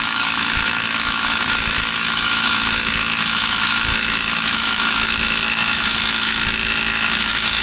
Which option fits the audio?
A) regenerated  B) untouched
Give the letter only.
A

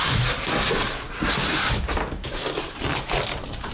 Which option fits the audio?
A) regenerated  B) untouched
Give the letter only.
B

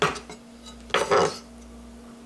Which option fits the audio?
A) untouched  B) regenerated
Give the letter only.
A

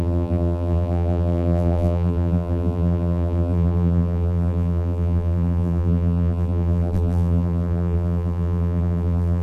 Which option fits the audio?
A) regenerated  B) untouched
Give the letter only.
A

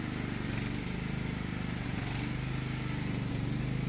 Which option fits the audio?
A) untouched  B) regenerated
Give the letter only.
A